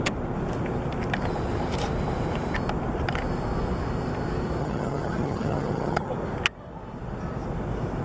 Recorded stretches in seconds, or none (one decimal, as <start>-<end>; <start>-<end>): 0.0-4.6; 6.1-8.0